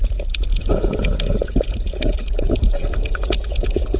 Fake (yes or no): yes